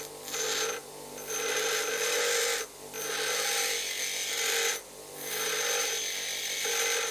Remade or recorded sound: recorded